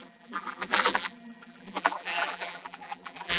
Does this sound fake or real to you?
fake